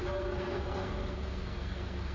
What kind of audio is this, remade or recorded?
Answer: remade